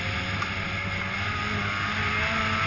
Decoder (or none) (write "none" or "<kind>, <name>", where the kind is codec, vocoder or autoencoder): none